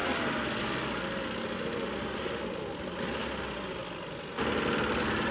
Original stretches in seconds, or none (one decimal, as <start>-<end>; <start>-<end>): 0.0-5.3